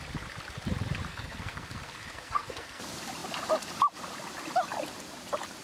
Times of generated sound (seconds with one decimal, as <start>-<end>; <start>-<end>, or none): 1.1-2.8